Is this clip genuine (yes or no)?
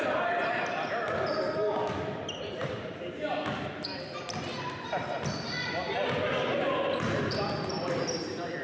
no